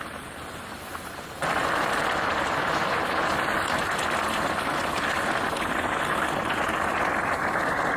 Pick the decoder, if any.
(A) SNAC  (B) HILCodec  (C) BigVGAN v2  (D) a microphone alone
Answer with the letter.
C